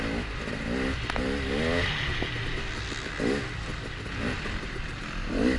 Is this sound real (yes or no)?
yes